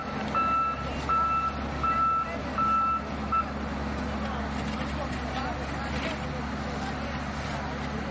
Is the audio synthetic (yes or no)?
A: no